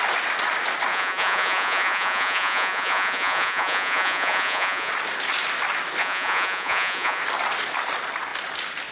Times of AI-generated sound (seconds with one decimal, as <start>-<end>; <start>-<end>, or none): 0.9-4.9; 6.0-7.2

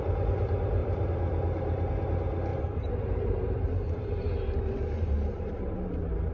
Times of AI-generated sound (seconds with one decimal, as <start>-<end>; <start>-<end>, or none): 0.8-1.9; 2.5-5.7

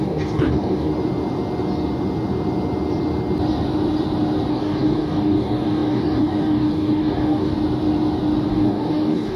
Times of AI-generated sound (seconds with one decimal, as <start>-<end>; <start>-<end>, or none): 0.0-0.9; 4.5-7.5; 8.5-9.4

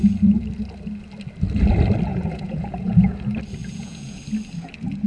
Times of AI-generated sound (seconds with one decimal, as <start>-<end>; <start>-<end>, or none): 2.1-3.2; 3.6-4.2

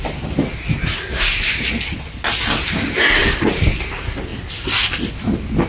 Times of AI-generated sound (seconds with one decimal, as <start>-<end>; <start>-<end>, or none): none